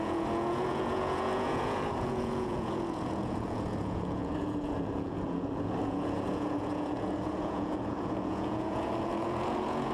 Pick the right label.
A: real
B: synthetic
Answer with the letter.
B